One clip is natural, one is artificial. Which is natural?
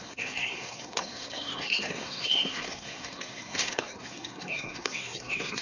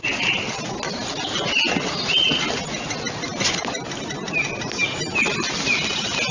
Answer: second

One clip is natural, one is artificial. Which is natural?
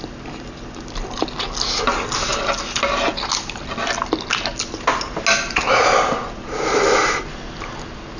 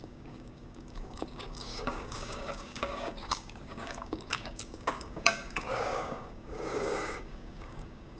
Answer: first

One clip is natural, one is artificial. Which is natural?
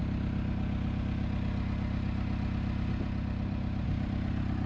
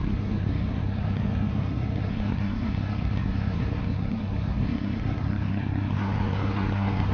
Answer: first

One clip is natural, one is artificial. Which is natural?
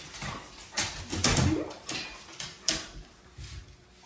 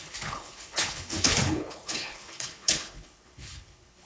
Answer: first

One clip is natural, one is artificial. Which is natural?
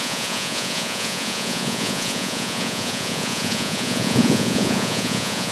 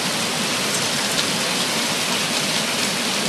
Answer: second